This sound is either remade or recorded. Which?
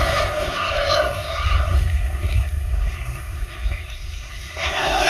remade